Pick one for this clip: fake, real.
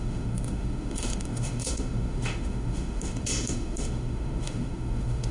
fake